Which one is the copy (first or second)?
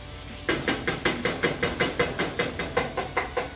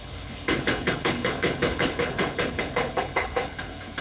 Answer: second